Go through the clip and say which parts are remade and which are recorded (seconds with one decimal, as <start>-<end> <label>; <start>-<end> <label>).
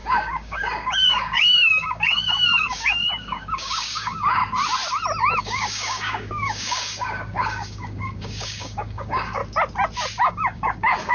0.0-4.4 remade; 4.4-5.4 recorded; 5.4-9.4 remade; 9.4-10.2 recorded; 10.2-11.1 remade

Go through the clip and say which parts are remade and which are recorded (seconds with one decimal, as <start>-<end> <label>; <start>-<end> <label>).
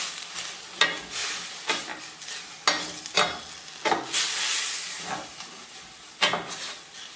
0.0-7.2 recorded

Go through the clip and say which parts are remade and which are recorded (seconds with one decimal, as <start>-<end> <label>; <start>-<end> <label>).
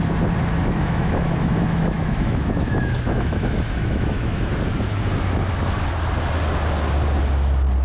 0.0-0.6 recorded; 0.6-4.5 remade; 4.5-7.8 recorded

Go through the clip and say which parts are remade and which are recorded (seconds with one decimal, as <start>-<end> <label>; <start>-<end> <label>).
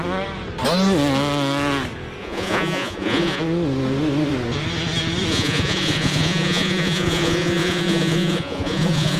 0.0-2.2 recorded; 2.2-3.4 remade; 3.4-5.3 recorded; 5.3-9.2 remade